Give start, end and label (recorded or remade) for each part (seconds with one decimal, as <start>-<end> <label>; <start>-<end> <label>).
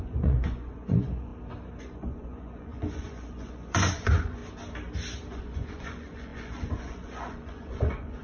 0.0-1.3 remade; 1.3-1.8 recorded; 1.8-4.4 remade; 4.4-5.3 recorded; 5.3-8.2 remade